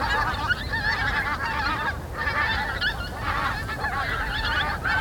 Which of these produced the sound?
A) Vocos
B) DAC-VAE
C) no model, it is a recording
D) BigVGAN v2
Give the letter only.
C